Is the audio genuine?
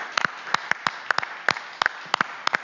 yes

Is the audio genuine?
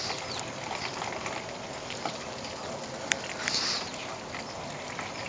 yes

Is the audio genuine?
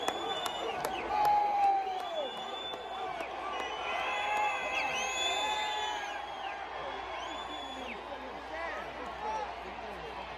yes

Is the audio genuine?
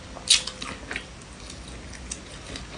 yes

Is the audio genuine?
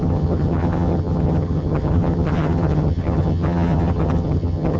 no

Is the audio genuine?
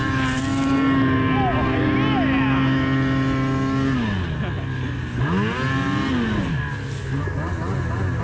yes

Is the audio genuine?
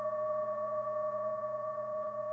no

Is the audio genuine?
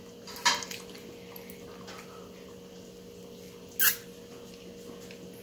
yes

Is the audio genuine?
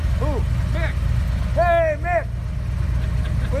yes